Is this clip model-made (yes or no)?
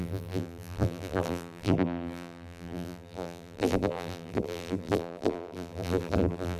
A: yes